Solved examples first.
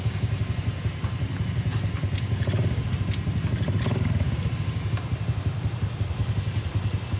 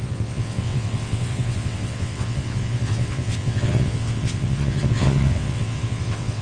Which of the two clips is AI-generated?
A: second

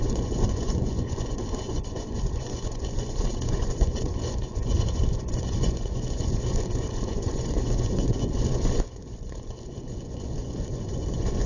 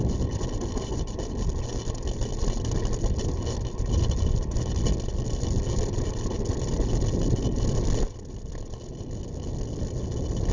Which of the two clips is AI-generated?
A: first